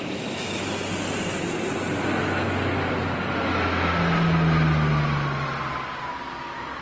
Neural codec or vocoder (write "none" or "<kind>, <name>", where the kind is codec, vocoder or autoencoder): none